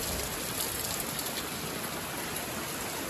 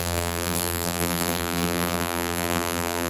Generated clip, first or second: second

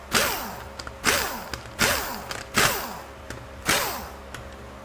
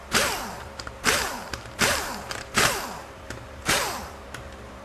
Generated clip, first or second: second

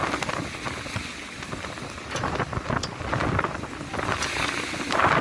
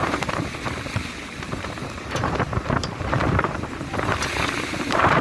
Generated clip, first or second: second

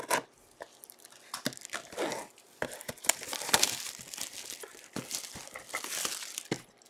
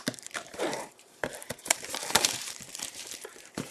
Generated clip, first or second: second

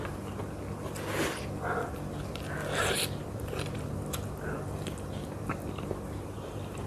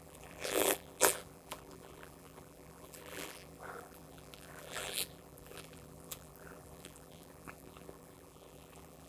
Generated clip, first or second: second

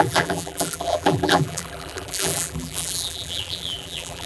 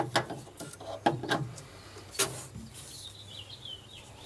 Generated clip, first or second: first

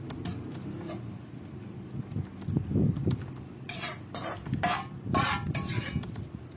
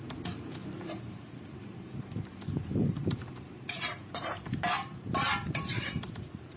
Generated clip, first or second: second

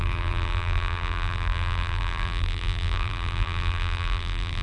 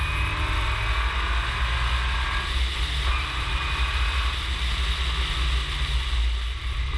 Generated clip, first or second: first